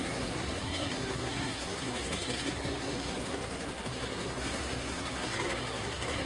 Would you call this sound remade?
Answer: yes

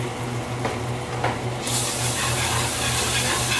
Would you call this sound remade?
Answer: no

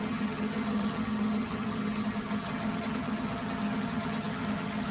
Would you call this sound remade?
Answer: yes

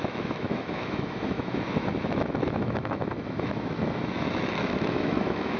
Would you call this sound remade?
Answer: yes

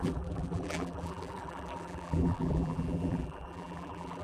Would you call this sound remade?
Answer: yes